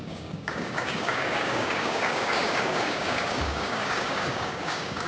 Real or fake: fake